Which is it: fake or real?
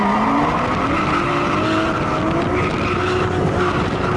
real